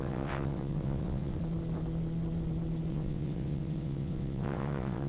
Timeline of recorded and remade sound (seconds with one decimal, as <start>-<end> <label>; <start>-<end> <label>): 0.0-1.4 remade; 1.4-2.9 recorded; 2.9-5.1 remade